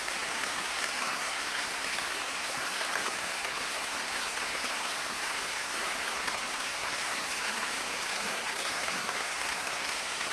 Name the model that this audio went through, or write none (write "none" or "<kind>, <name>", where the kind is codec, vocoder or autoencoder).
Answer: codec, SNAC